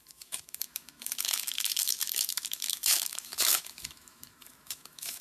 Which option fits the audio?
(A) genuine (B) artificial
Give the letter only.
B